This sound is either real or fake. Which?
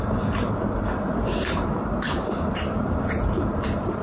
fake